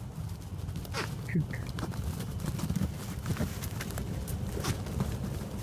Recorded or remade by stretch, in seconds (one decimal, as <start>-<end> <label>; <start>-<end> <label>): 0.0-5.6 recorded